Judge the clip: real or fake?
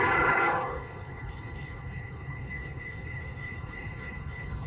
fake